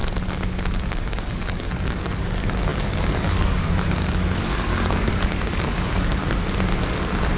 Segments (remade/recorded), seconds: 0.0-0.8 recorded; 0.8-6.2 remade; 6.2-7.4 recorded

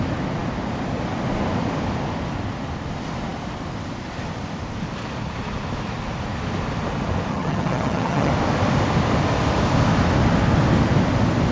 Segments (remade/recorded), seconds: 0.0-7.3 recorded; 7.3-8.3 remade; 8.3-11.5 recorded

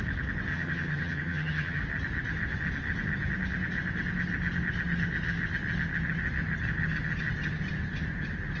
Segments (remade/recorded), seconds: 0.0-0.5 recorded; 0.5-1.8 remade; 1.8-8.6 recorded

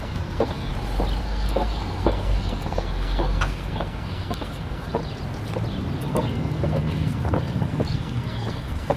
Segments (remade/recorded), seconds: 0.0-0.7 remade; 0.7-1.2 recorded; 1.2-5.0 remade; 5.0-6.0 recorded; 6.0-9.0 remade

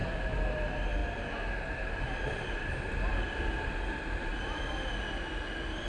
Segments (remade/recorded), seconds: 0.0-5.9 recorded